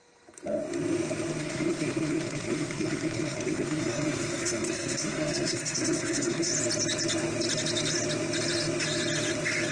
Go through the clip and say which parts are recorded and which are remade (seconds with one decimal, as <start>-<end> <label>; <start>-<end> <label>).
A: 0.0-1.4 recorded; 1.4-6.5 remade; 6.5-9.7 recorded